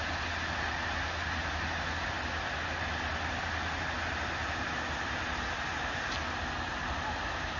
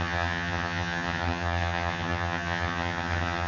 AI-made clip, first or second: second